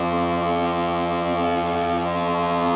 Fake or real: fake